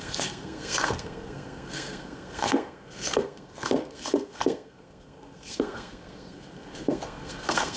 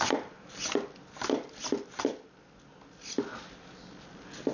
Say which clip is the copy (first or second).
first